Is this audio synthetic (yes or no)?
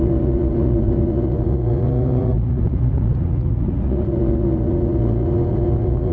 yes